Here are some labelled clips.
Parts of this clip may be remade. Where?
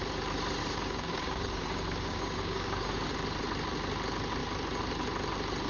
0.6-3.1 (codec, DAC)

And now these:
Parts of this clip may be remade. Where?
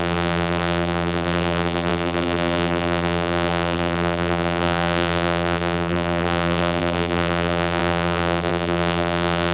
0.0-9.5 (vocoder, BigVGAN v2)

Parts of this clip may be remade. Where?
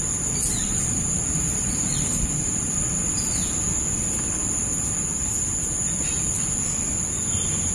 0.6-3.1 (vocoder, BigVGAN v2)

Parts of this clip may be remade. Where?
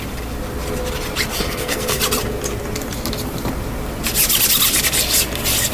1.3-2.0 (codec, SNAC)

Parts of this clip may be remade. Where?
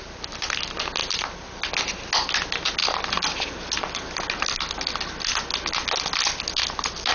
none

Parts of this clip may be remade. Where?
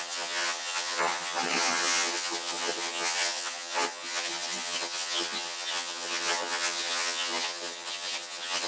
0.0-8.7 (vocoder, HiFi-GAN)